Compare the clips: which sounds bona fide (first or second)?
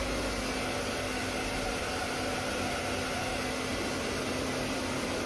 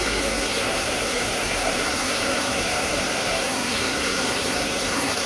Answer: first